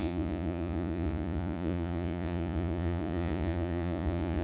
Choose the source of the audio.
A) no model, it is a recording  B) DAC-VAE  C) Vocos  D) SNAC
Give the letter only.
C